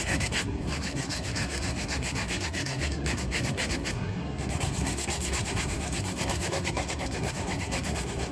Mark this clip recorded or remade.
remade